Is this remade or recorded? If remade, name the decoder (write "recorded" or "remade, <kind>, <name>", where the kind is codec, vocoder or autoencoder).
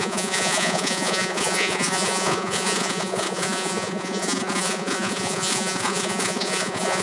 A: remade, vocoder, Vocos